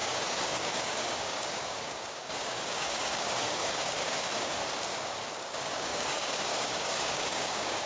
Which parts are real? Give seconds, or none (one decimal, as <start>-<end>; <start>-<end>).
4.6-5.3